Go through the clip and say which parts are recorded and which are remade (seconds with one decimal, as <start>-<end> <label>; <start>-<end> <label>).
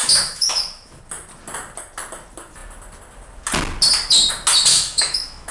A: 0.0-1.0 remade; 1.0-4.7 recorded; 4.7-5.5 remade